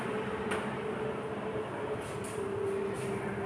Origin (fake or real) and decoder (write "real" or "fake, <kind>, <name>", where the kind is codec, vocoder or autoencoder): real